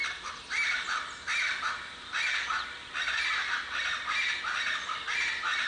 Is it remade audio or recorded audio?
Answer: recorded